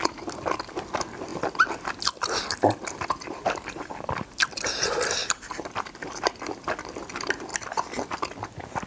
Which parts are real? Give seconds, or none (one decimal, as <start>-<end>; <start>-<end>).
0.0-1.3; 4.5-5.2; 6.3-8.9